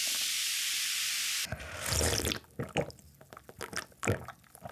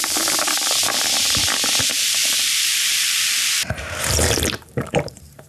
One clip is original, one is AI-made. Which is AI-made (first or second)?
second